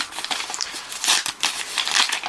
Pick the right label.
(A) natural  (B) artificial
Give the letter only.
A